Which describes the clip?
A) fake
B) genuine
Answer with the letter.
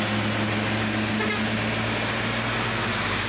B